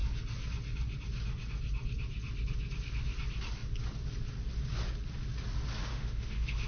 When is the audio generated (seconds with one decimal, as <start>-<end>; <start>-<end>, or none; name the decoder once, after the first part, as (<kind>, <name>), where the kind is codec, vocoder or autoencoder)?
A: 5.9-6.7 (autoencoder, DAC-VAE)